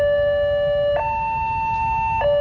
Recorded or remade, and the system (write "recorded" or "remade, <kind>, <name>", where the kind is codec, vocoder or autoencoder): recorded